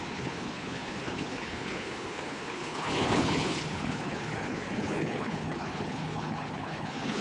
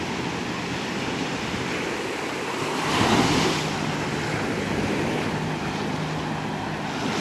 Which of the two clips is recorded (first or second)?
second